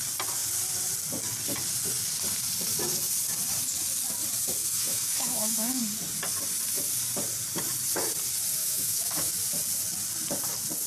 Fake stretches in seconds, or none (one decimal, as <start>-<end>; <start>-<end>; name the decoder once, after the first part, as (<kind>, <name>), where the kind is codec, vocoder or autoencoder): 4.6-5.8 (autoencoder, DAC-VAE); 8.6-9.3